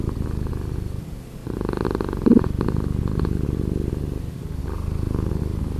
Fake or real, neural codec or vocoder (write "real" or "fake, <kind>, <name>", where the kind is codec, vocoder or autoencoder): real